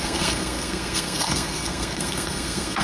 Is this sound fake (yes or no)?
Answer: yes